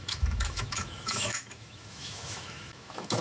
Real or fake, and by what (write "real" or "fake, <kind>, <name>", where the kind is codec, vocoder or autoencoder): fake, autoencoder, DAC-VAE